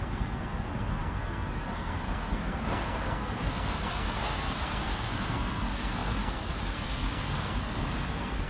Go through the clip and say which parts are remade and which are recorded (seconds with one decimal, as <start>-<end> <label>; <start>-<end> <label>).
0.0-8.5 remade